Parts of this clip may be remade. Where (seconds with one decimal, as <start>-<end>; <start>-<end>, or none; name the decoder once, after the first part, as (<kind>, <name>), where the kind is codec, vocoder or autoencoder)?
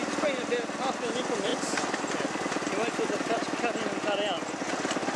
none